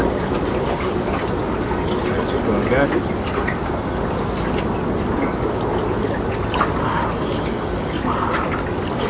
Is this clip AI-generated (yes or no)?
no